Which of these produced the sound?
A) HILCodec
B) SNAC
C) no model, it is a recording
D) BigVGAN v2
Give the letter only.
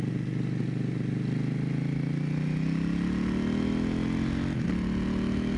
C